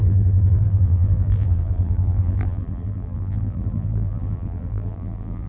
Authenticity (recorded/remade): remade